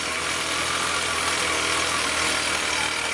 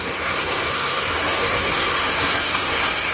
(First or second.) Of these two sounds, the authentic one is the first